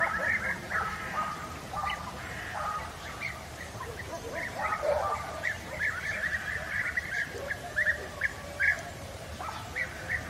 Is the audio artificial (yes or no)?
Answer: yes